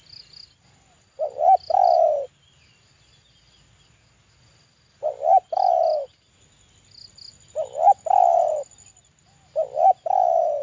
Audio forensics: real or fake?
real